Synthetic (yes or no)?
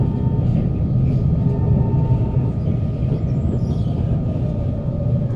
no